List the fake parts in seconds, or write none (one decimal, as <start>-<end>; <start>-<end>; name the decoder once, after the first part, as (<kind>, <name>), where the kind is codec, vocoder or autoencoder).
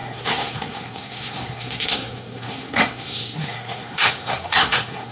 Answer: 0.0-5.1 (codec, SNAC)